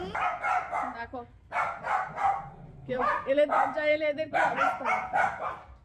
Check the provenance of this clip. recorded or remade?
recorded